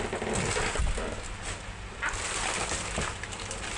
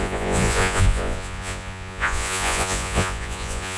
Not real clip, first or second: second